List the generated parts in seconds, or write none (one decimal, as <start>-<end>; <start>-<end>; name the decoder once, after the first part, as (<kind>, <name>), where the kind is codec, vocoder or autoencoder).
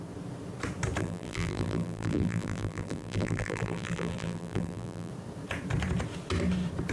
1.0-5.1 (vocoder, BigVGAN v2)